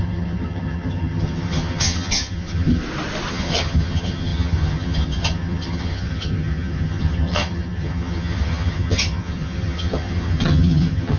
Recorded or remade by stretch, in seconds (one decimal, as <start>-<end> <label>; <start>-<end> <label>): 0.0-2.8 remade; 2.8-3.3 recorded; 3.3-11.2 remade